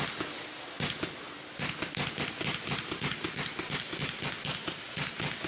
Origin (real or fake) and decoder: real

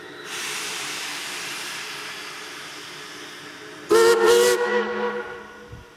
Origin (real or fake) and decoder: real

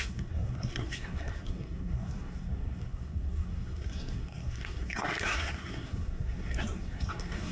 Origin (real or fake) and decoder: fake, codec, SNAC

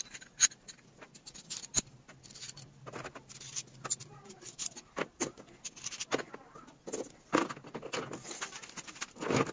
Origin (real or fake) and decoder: real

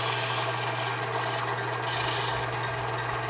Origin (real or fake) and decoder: real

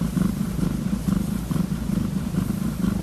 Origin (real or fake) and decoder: real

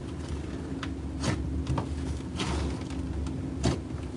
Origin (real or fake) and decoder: real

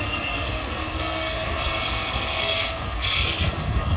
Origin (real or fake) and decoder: fake, codec, SNAC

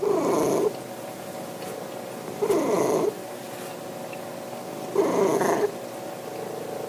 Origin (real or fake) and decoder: real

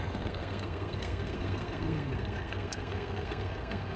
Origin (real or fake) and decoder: fake, codec, SNAC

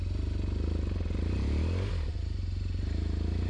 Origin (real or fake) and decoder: real